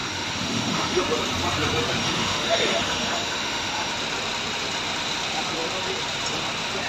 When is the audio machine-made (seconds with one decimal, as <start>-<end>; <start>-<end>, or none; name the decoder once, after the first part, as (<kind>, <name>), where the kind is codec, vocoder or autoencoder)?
0.0-1.0 (autoencoder, DAC-VAE); 2.0-3.9